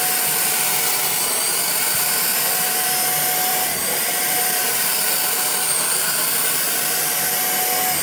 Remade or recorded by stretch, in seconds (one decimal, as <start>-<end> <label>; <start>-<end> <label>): 0.0-3.5 recorded; 3.5-6.9 remade; 6.9-8.0 recorded